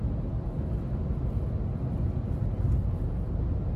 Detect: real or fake real